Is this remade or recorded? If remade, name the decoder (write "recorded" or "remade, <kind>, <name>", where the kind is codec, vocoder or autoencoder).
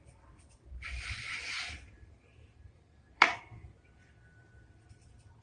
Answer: remade, vocoder, BigVGAN v2